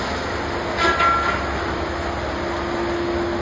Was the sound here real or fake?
real